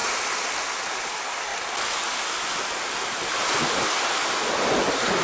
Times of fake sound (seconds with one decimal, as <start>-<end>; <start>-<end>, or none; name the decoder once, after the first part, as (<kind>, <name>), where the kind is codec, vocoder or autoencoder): none